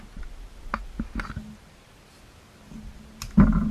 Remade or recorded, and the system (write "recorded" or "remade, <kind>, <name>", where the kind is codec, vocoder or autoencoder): recorded